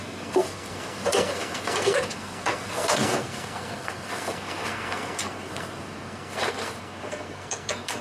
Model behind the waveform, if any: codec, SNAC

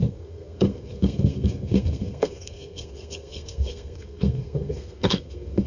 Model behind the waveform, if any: codec, SNAC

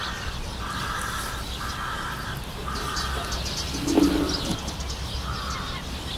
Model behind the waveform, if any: none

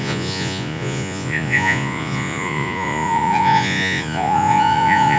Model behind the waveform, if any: vocoder, Vocos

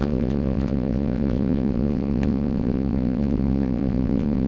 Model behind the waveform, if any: vocoder, WaveNeXt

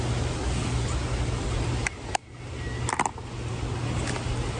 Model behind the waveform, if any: none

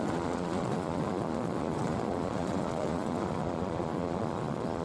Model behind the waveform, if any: vocoder, Vocos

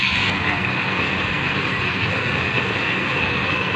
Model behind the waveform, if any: codec, SNAC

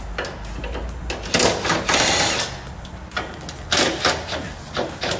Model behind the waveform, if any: none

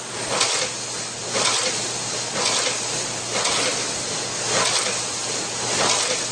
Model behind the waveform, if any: none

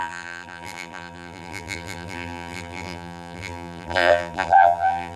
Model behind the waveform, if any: vocoder, BigVGAN v2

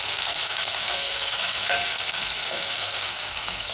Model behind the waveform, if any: codec, SNAC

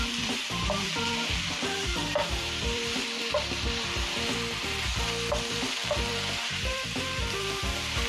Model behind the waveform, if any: vocoder, BigVGAN v2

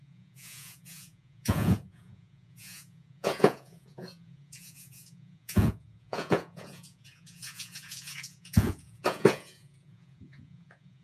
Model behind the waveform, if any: vocoder, Vocos